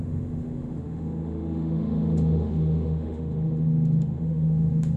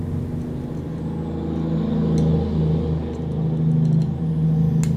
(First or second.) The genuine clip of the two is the second